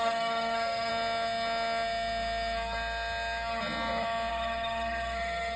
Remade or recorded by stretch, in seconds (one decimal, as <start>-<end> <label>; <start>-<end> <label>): 0.0-0.9 remade; 0.9-4.3 recorded; 4.3-5.6 remade